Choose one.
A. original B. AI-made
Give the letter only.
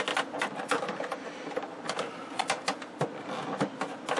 A